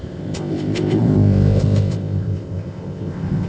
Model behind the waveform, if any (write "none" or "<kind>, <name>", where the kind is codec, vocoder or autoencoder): codec, ZipCodec